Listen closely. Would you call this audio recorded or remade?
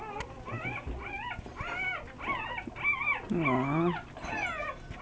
recorded